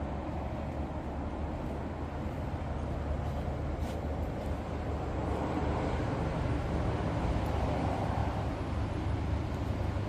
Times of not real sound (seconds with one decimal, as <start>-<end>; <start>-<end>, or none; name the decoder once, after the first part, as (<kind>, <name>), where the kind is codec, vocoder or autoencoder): none